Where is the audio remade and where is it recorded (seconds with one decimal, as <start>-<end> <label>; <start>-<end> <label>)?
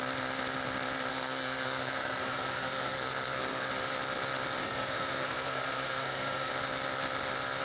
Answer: 0.0-1.1 recorded; 1.1-3.7 remade; 3.7-4.6 recorded; 4.6-6.5 remade; 6.5-7.6 recorded